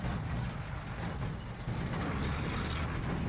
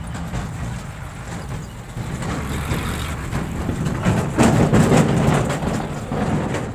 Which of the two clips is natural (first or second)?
second